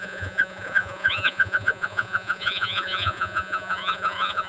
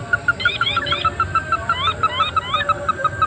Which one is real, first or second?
second